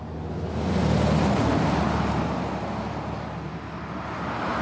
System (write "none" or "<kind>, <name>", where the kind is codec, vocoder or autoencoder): none